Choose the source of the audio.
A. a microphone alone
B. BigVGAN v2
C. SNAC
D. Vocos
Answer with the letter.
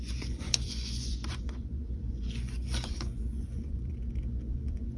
D